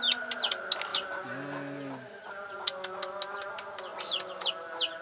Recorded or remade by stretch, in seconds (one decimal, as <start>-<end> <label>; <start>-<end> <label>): 0.0-5.0 recorded